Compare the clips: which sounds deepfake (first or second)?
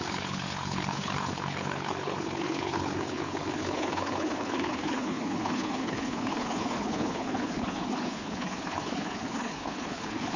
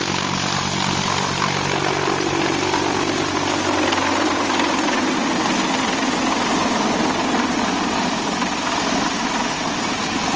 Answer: first